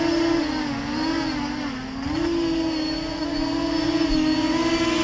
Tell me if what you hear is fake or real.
real